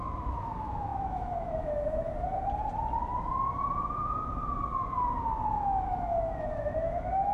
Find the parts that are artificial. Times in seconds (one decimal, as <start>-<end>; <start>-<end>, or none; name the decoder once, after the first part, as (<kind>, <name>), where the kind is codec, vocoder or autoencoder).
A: 0.0-2.1 (autoencoder, DAC-VAE); 5.5-7.3